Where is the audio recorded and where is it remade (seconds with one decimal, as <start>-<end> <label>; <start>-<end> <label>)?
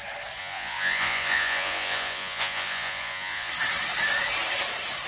0.0-0.4 recorded; 0.4-3.5 remade; 3.5-5.1 recorded